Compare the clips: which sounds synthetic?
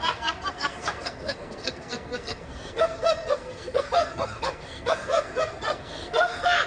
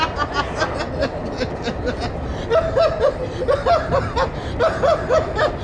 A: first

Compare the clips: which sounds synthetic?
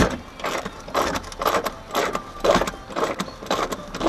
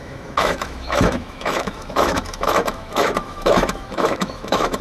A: second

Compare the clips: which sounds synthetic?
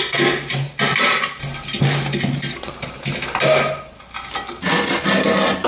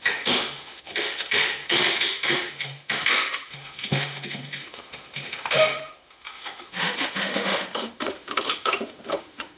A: second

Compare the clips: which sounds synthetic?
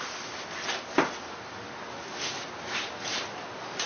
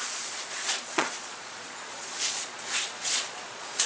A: second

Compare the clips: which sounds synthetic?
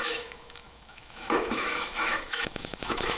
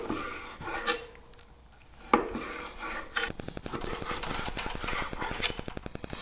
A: first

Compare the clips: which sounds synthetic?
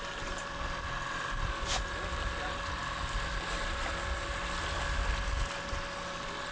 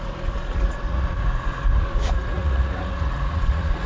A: second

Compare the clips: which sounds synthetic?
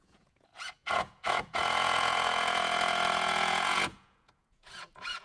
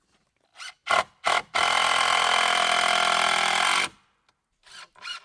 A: first